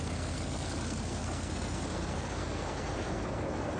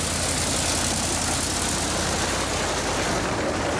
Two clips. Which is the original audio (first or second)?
second